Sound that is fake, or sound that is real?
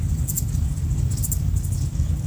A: real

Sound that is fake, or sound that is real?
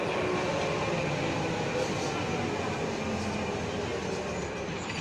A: real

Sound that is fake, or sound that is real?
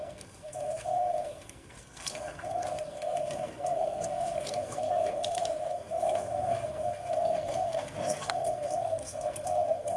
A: fake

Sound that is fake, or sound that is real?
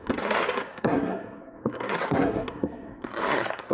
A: fake